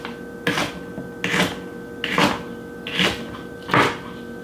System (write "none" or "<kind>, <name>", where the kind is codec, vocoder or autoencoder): none